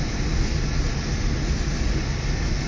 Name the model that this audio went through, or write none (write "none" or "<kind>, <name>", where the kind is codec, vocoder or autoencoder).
none